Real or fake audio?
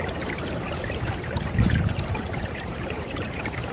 fake